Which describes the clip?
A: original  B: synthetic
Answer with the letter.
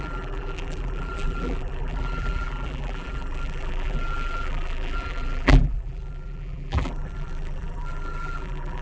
B